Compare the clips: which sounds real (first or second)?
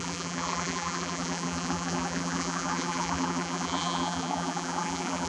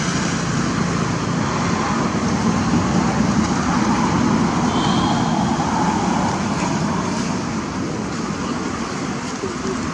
second